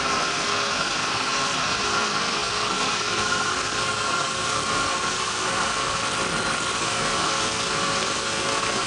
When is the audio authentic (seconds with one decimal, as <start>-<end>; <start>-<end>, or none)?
6.0-6.8